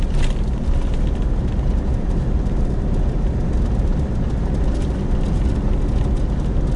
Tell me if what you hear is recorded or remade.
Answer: recorded